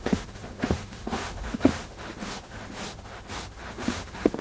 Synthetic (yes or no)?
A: yes